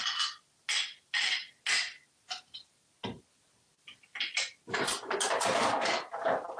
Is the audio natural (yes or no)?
yes